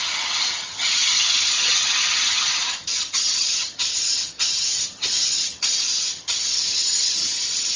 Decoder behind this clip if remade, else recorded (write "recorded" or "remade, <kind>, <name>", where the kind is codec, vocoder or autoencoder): remade, vocoder, HiFi-GAN